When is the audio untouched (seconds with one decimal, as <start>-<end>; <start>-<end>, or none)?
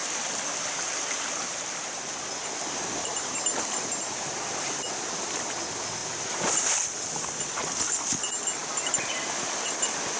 0.0-10.2